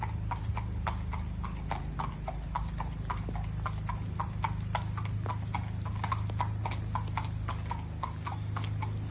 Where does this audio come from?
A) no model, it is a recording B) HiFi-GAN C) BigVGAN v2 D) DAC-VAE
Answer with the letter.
A